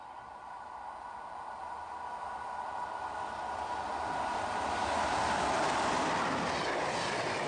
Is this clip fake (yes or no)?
no